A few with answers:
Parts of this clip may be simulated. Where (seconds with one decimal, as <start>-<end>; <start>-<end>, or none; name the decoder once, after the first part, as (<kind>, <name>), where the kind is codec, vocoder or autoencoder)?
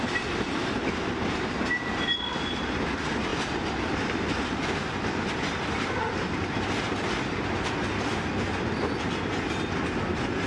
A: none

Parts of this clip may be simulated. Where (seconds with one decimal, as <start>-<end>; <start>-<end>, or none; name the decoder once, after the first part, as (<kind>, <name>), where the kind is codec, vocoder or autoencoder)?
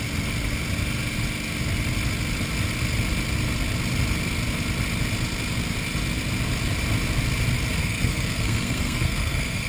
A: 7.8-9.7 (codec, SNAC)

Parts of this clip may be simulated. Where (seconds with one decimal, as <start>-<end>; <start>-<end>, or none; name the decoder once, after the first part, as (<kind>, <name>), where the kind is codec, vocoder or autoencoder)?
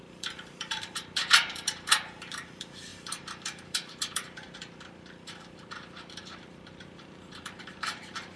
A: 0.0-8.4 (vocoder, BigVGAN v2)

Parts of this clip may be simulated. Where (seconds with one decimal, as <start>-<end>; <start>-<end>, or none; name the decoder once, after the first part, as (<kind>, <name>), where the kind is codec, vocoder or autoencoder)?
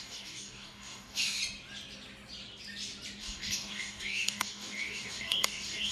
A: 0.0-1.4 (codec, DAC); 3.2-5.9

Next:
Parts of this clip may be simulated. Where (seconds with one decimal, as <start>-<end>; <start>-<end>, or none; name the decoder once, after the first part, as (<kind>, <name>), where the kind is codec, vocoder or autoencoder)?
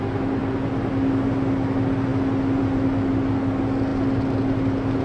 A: none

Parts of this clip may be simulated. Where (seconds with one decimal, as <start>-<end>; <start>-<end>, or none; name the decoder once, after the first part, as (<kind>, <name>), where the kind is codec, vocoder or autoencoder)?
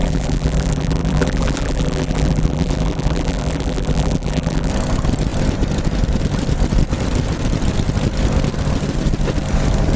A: 0.0-4.7 (vocoder, BigVGAN v2)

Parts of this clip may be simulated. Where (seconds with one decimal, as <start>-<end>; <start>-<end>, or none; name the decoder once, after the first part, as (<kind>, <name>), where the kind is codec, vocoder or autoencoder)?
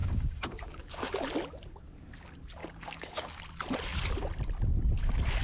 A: 0.0-1.1 (codec, DAC); 2.6-3.4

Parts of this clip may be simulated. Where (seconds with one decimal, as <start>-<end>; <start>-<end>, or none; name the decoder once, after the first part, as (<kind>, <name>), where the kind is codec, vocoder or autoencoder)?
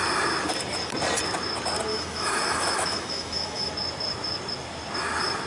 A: 1.9-3.7 (autoencoder, DAC-VAE)